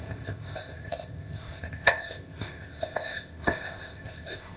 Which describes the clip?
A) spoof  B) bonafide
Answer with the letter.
A